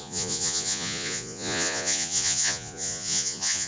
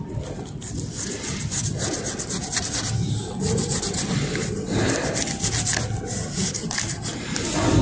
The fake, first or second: first